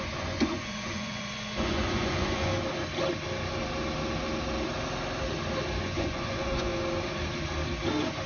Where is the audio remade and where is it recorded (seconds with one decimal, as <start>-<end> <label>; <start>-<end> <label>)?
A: 0.0-2.5 remade; 2.5-5.8 recorded; 5.8-6.7 remade; 6.7-8.3 recorded